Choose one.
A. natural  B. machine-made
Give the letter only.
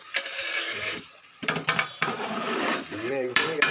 B